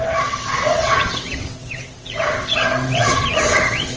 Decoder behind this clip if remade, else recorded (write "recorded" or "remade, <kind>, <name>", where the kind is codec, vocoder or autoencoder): remade, vocoder, WaveNeXt